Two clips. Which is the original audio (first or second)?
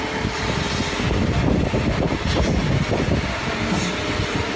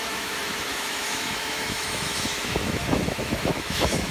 first